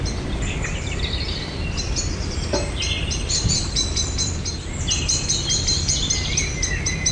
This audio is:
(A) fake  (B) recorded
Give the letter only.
B